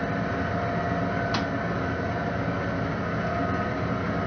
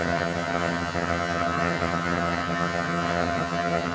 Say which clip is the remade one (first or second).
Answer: second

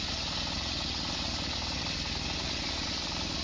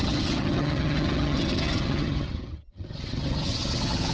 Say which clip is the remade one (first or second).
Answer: second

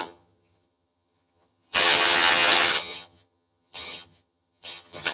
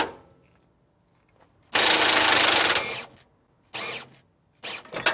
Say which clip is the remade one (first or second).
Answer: first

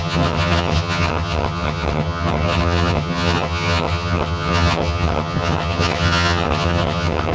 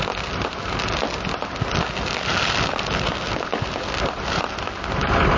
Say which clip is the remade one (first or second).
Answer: first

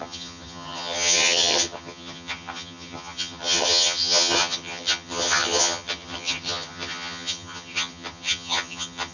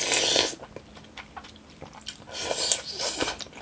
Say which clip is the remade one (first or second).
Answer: first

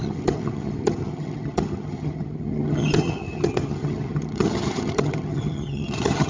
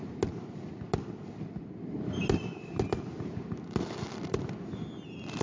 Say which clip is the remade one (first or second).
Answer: first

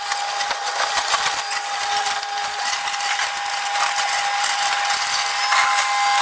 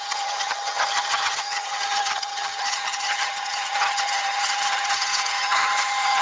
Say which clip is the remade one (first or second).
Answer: second